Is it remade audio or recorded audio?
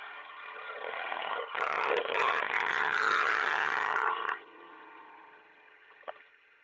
remade